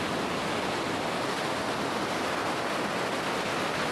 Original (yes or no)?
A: yes